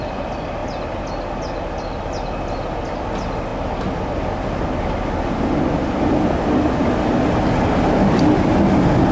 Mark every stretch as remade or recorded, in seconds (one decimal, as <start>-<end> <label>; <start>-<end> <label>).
0.0-9.1 recorded